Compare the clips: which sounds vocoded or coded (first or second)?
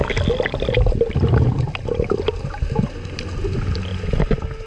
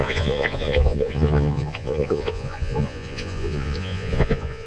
second